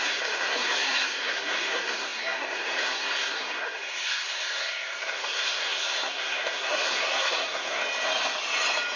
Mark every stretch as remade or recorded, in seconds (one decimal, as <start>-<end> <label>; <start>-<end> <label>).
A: 0.0-7.8 remade; 7.8-9.0 recorded